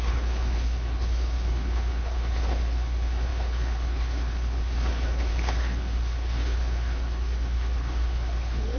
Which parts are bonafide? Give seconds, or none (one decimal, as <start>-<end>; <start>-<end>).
none